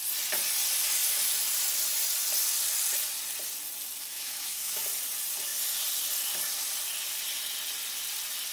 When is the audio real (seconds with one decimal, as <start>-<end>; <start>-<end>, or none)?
0.0-4.1; 4.8-8.5